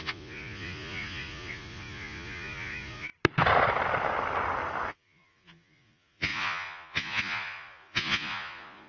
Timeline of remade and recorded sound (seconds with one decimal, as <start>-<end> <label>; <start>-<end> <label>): 0.0-3.1 remade; 3.1-4.9 recorded; 4.9-8.9 remade